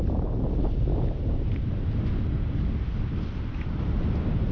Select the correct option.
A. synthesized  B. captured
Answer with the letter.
B